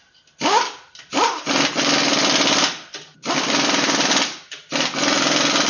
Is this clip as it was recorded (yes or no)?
yes